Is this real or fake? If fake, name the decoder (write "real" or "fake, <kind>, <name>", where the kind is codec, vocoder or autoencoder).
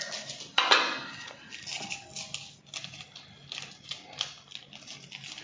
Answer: real